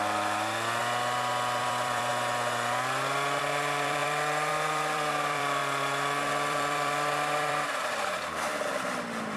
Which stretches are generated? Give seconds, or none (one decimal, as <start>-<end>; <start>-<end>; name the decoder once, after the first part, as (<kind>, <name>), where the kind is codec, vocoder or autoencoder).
0.0-0.8 (vocoder, BigVGAN v2); 1.6-2.1; 3.4-5.6; 6.3-9.4